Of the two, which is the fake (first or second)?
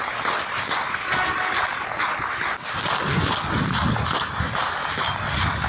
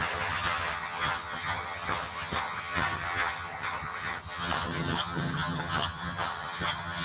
second